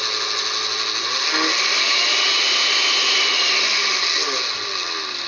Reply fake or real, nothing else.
real